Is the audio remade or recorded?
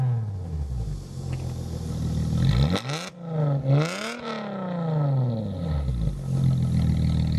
recorded